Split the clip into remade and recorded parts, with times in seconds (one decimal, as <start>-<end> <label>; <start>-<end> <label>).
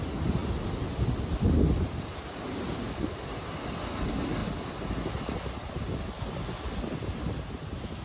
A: 0.0-8.0 recorded